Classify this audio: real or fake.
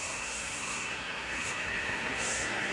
fake